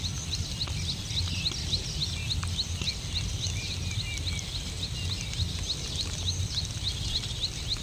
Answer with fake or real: real